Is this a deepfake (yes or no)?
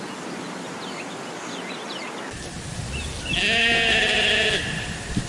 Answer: no